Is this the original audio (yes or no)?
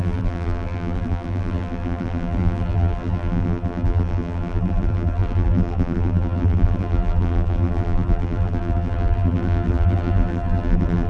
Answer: no